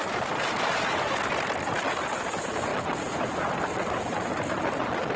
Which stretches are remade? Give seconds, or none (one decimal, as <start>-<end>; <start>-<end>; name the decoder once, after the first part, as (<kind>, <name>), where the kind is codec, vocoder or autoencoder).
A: none